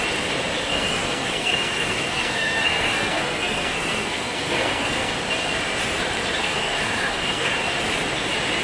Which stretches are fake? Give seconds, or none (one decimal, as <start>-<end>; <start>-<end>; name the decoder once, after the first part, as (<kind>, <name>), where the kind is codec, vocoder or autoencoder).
0.7-5.1 (codec, SNAC); 6.4-7.5